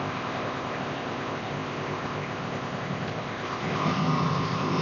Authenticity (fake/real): fake